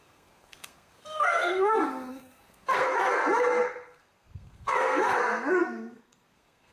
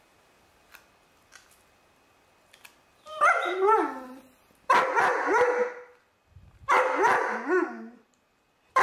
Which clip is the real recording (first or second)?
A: second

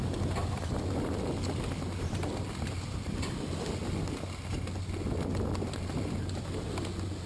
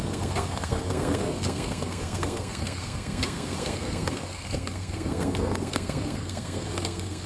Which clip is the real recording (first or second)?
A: first